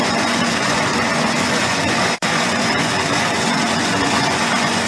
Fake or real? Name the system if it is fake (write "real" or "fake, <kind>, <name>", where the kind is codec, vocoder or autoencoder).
fake, vocoder, Vocos